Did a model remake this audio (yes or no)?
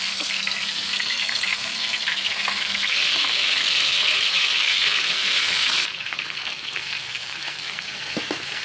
yes